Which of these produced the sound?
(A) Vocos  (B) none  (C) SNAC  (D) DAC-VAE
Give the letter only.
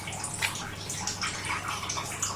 B